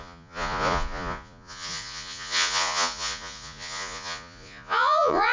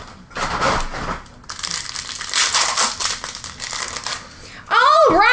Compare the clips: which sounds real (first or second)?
second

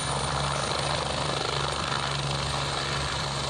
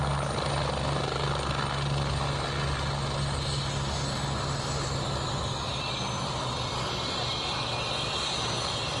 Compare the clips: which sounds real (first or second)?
second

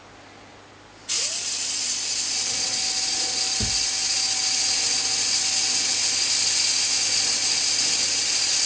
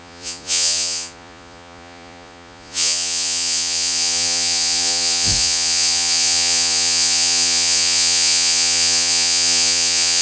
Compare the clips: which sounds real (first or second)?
first